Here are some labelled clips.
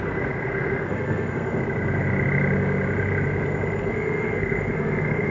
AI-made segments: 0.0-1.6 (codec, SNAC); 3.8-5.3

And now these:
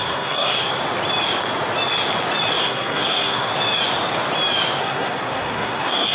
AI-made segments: 0.0-0.7 (codec, SNAC); 2.6-3.5; 4.8-6.1

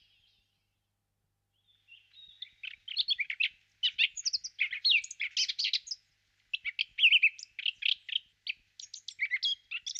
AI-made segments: none

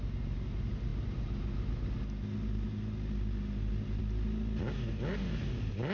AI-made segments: none

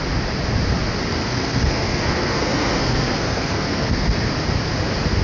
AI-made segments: 1.2-4.3 (codec, SNAC)

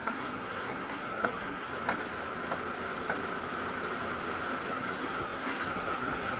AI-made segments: 0.0-1.7 (codec, SNAC); 4.7-6.4

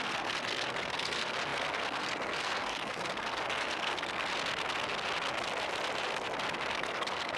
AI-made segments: 0.0-4.3 (codec, SNAC); 6.7-7.4